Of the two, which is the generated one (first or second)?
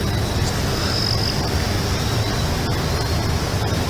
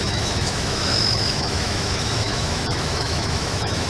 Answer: second